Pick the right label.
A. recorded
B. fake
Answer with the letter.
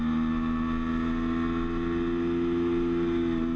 A